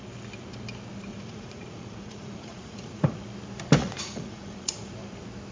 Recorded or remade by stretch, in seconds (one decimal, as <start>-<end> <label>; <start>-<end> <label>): 0.0-1.1 recorded; 1.1-3.1 remade; 3.1-3.8 recorded; 3.8-4.9 remade; 4.9-5.5 recorded